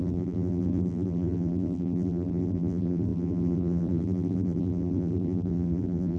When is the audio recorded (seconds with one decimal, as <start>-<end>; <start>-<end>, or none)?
none